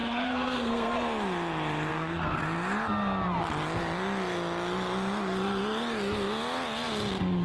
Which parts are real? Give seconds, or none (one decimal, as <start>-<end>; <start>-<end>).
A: 0.9-1.9; 2.4-7.4